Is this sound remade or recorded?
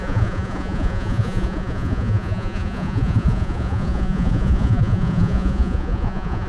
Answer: remade